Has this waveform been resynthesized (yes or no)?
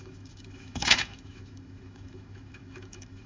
yes